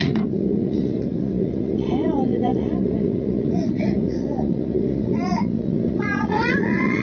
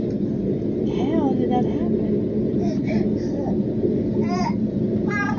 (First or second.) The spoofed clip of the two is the first